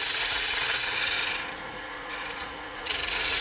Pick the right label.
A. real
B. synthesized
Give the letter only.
B